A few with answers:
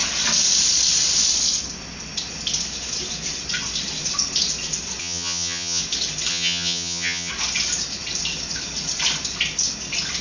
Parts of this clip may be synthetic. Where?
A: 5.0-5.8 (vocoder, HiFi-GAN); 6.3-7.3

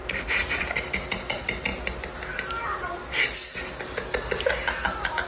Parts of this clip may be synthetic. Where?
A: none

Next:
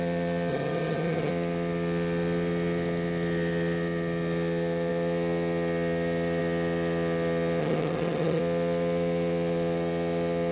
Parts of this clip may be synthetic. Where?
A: 0.5-1.3 (vocoder, HiFi-GAN); 7.6-8.4